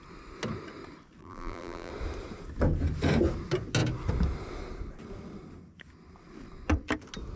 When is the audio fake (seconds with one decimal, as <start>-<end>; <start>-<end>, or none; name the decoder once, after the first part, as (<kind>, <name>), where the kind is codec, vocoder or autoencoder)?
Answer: 1.2-1.9 (vocoder, BigVGAN v2)